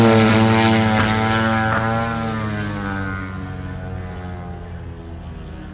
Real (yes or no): yes